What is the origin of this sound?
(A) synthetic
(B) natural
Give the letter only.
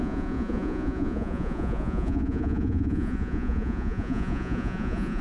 A